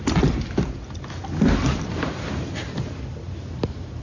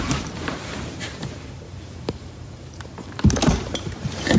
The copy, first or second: second